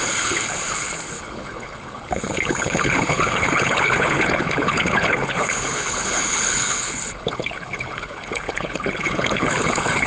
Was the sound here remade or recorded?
remade